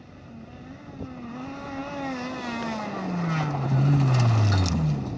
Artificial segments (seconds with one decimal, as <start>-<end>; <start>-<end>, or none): none